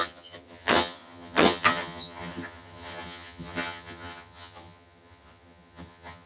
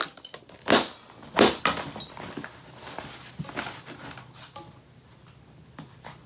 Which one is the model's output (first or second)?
first